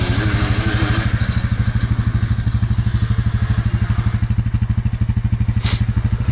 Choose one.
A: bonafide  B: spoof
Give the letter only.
A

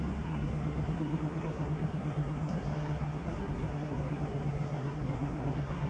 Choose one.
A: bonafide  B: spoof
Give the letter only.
B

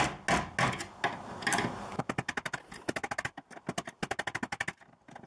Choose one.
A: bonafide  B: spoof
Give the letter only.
A